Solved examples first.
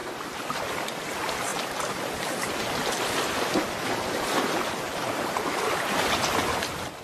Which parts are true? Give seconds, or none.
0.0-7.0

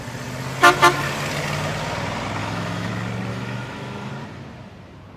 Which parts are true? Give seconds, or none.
0.0-2.4; 2.9-3.3; 4.1-5.2

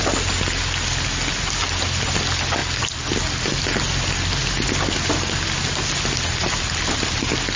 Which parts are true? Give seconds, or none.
0.0-7.6

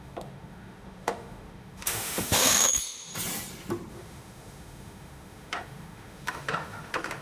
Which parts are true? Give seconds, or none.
3.1-3.9

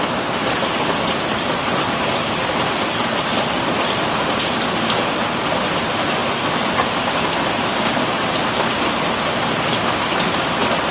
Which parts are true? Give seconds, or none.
0.0-10.9

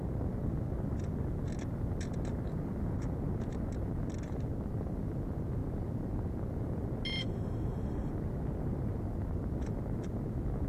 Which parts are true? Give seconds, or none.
0.0-7.2; 8.1-10.7

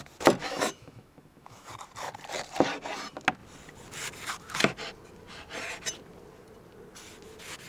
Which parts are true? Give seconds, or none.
0.0-0.4; 1.7-7.7